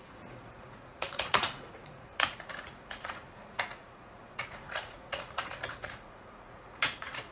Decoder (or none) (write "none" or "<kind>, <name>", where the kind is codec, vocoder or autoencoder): vocoder, Vocos